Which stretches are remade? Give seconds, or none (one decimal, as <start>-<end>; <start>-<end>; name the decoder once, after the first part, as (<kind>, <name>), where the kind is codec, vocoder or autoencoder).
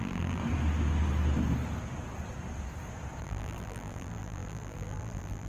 0.0-0.4 (vocoder, BigVGAN v2); 3.2-5.5